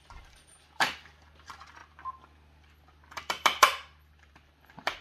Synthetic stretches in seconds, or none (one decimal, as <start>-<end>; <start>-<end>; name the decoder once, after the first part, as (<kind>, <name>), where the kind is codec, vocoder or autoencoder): 0.0-1.8 (vocoder, BigVGAN v2); 4.3-5.0